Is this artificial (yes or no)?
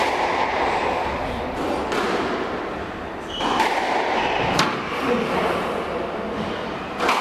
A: no